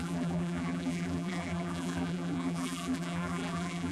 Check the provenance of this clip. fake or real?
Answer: fake